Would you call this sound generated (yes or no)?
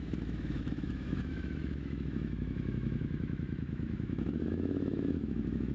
yes